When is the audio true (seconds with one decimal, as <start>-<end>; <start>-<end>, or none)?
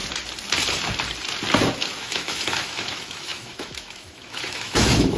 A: 0.0-1.7